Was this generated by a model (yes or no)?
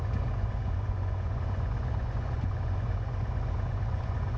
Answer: yes